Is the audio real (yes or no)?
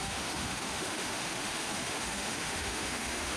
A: no